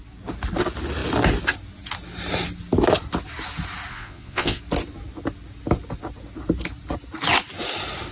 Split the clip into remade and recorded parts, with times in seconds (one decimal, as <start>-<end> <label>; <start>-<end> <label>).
0.0-3.9 recorded; 3.9-4.6 remade; 4.6-8.1 recorded